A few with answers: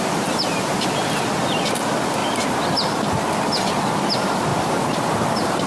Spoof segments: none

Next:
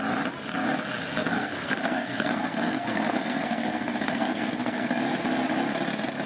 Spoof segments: 1.2-5.0 (codec, SNAC)

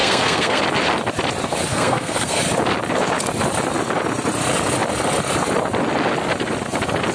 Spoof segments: 0.0-0.6 (codec, SNAC); 1.7-2.4

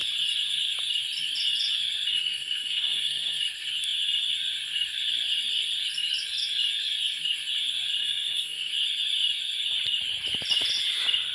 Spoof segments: 2.1-3.4 (codec, SNAC); 8.0-8.7

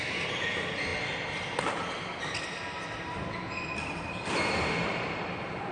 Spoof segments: none